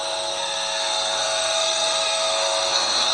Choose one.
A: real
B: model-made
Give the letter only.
B